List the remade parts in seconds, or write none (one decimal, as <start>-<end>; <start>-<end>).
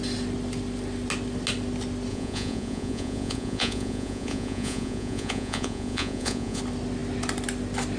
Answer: 2.1-6.6